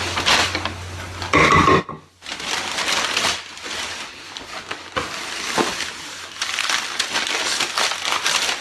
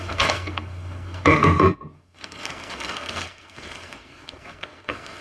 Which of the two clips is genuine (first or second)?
first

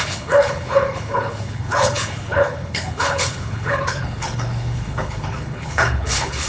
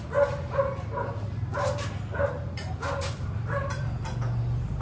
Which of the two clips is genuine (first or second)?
second